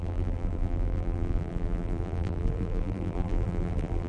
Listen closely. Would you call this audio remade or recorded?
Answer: remade